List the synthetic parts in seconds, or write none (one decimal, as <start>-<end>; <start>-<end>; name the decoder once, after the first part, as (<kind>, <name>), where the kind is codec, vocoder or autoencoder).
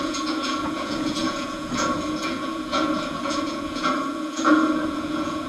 0.0-5.5 (vocoder, Vocos)